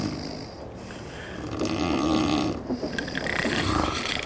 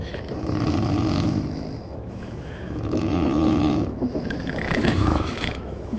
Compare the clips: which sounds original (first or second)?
first